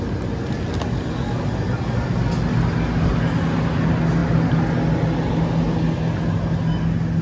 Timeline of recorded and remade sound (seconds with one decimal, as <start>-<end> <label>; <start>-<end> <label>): 0.0-7.2 recorded